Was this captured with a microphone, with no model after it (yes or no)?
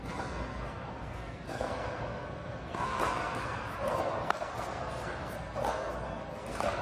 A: no